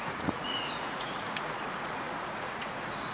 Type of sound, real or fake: fake